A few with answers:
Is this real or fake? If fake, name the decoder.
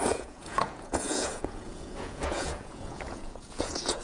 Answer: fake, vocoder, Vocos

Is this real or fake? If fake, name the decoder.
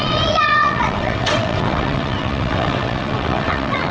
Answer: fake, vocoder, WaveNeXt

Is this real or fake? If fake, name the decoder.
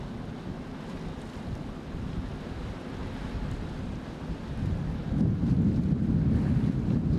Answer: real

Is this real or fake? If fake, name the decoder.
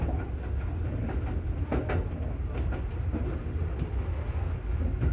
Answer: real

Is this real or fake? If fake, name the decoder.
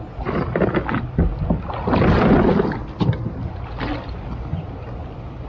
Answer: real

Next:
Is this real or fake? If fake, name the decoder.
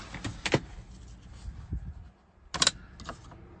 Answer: real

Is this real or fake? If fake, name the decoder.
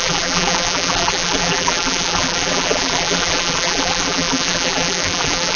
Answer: fake, vocoder, BigVGAN v2